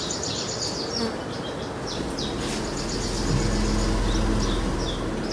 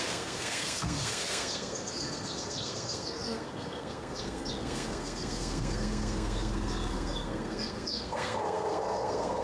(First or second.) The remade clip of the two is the second